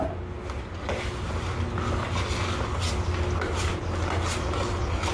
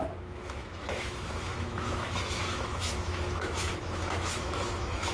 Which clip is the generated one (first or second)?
second